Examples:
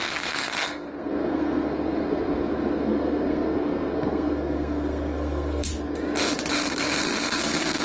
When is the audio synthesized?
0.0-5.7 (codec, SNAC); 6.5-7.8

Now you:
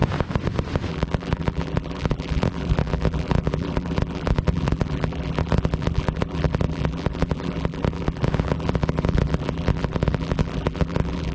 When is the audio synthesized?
0.9-11.3 (vocoder, BigVGAN v2)

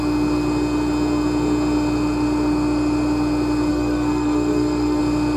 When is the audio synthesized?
3.7-5.0 (codec, SNAC)

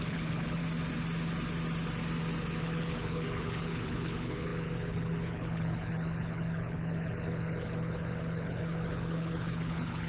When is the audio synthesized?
0.0-0.6 (codec, HILCodec); 2.6-10.1

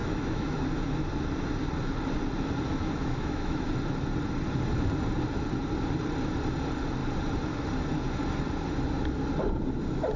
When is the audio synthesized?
0.0-0.6 (autoencoder, DAC-VAE); 2.7-3.7

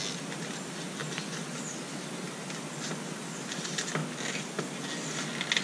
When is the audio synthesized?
none

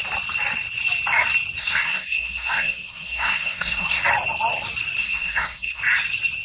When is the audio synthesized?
1.6-4.0 (codec, SNAC); 5.0-5.8

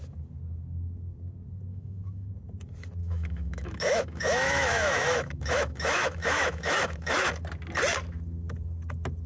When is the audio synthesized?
1.7-2.3 (autoencoder, DAC-VAE); 3.0-7.3